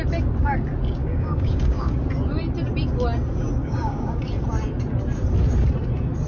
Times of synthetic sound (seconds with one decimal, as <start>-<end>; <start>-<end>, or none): 1.0-1.9; 3.6-4.2